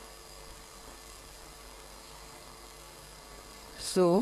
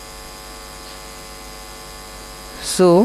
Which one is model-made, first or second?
first